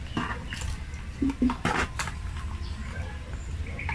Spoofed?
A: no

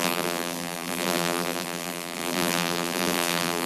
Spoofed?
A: yes